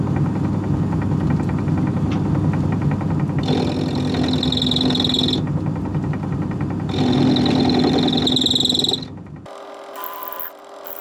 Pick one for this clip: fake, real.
real